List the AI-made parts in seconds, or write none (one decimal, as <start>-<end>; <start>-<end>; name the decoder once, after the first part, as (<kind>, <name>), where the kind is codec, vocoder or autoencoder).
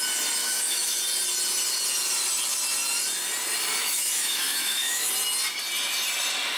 0.4-1.0 (autoencoder, DAC-VAE); 3.8-5.1